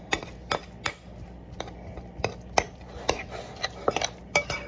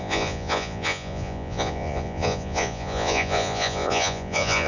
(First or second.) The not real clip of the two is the second